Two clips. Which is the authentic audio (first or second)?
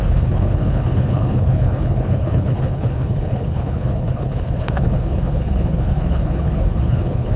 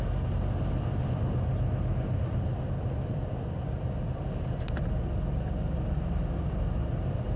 second